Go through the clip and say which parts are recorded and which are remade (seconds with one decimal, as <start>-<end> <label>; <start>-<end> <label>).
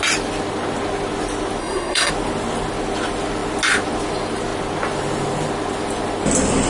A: 0.0-1.6 recorded; 1.6-2.1 remade; 2.1-6.7 recorded